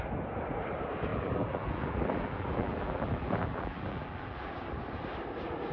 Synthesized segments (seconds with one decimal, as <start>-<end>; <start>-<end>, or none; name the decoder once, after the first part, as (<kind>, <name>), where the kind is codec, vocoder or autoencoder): 1.1-4.5 (vocoder, BigVGAN v2)